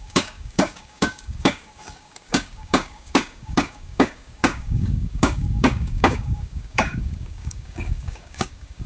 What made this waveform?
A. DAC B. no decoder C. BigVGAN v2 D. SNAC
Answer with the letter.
A